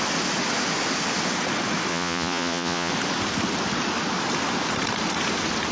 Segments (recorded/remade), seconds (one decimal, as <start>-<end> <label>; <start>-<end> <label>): 0.0-1.9 recorded; 1.9-2.9 remade; 2.9-5.7 recorded